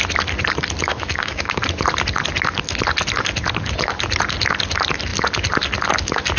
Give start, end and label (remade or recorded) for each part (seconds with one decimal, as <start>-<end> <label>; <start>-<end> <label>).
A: 0.0-0.9 recorded; 0.9-1.6 remade; 1.6-6.4 recorded